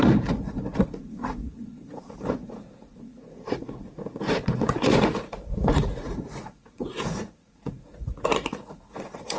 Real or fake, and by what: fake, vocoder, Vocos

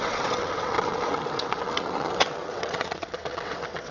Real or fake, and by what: fake, vocoder, WaveNeXt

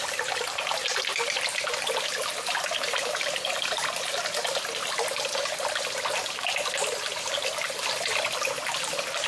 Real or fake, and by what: real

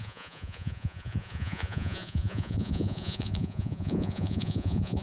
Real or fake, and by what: fake, vocoder, Vocos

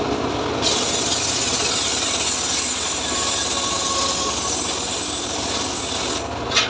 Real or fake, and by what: real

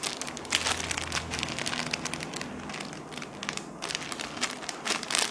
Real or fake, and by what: real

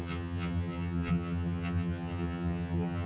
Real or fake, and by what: fake, vocoder, HiFi-GAN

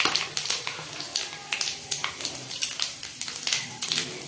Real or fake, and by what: real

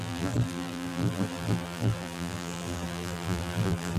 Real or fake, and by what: fake, vocoder, BigVGAN v2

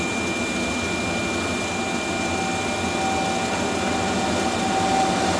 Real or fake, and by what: real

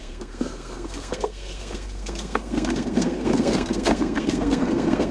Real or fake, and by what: fake, codec, SNAC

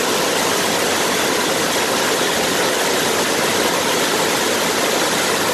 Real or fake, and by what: real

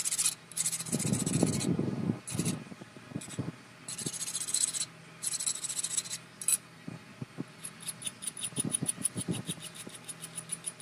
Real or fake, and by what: real